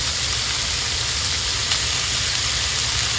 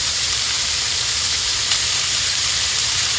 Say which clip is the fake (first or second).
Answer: second